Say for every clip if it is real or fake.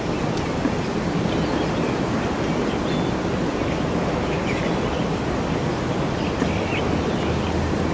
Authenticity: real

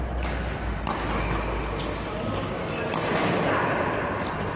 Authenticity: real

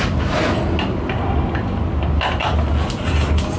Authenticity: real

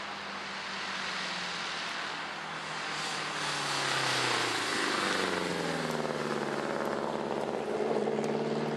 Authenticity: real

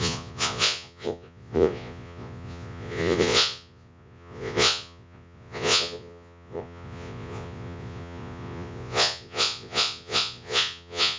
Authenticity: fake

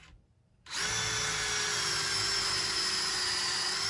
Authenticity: real